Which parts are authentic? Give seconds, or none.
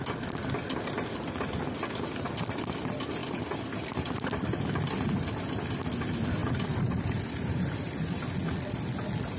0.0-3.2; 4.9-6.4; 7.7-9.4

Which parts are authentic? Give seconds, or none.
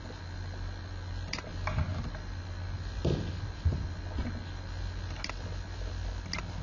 0.0-6.6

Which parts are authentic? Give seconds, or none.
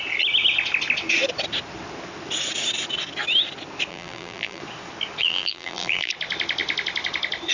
0.0-3.9; 4.6-5.2; 6.1-7.5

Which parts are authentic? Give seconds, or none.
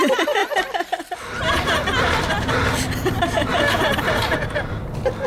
0.4-1.4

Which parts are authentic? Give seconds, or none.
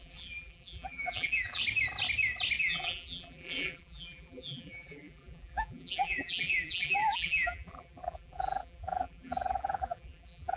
1.6-2.6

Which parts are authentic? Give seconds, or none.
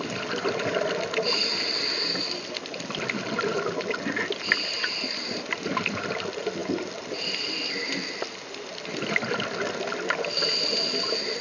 0.0-11.4